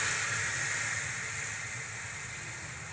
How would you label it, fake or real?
real